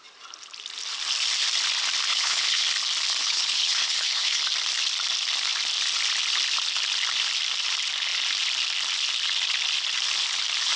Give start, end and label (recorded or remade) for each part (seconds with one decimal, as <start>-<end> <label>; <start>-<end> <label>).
0.0-2.1 recorded; 2.1-2.6 remade; 2.6-3.2 recorded; 3.2-4.4 remade; 4.4-10.8 recorded